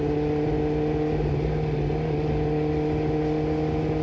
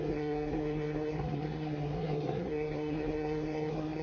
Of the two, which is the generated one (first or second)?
second